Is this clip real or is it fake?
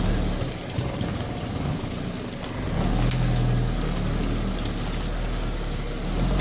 real